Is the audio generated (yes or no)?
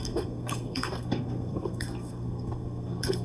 yes